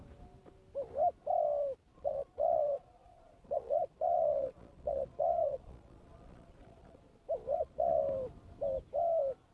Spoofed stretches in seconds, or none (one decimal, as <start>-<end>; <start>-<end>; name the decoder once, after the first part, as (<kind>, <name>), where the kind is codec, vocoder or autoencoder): 1.9-7.0 (vocoder, Vocos); 7.5-8.0